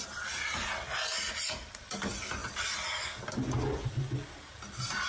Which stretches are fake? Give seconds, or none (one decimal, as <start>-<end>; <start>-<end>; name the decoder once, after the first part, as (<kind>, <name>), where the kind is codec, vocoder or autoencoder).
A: none